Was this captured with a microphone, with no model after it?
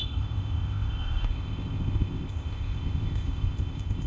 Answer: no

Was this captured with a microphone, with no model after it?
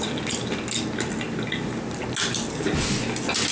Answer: yes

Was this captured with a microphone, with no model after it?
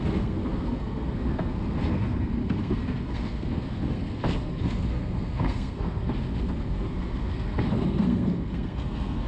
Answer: no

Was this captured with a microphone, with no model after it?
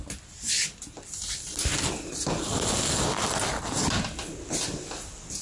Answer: yes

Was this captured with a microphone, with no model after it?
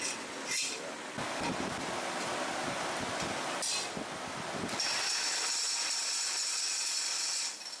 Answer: yes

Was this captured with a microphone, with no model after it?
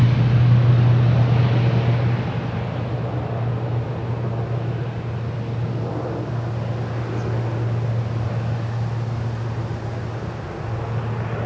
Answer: yes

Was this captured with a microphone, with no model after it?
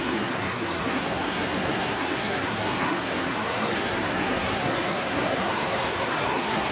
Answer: no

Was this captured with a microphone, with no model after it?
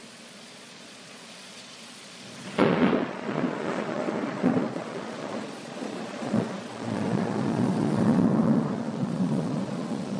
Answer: no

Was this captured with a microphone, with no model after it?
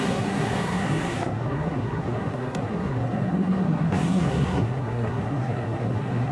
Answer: no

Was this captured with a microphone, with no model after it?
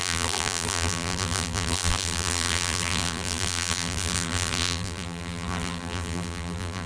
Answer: no